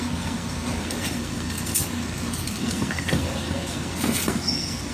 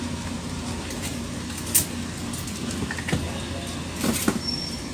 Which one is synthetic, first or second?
first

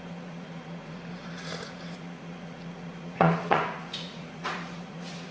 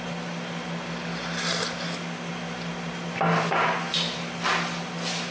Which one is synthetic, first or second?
first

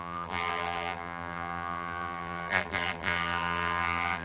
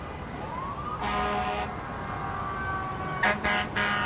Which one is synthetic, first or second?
first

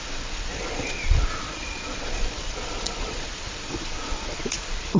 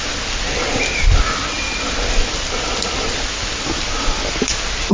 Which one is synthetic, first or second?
first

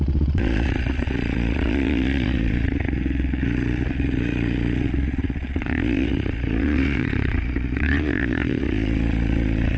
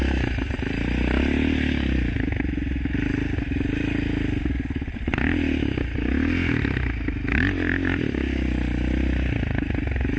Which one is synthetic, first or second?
first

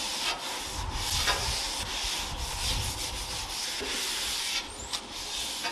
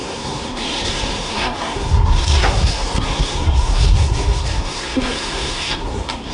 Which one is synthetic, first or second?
second